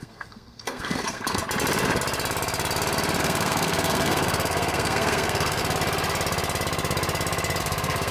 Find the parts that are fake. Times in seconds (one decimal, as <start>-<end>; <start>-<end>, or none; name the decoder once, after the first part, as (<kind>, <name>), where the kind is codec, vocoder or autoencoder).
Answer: 0.0-1.4 (codec, SNAC); 3.2-5.6; 7.6-8.1